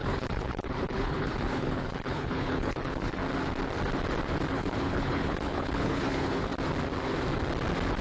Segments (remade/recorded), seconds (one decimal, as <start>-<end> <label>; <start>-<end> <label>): 0.0-3.2 remade; 3.2-4.5 recorded; 4.5-6.5 remade; 6.5-8.0 recorded